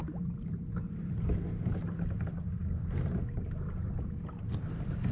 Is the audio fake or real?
real